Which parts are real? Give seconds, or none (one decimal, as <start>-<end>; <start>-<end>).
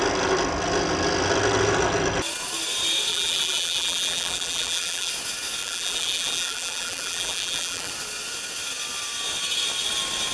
0.0-3.1; 5.1-5.6; 7.9-10.3